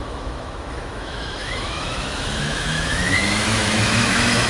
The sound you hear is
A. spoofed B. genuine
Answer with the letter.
A